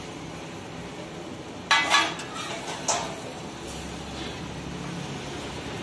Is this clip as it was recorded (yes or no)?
yes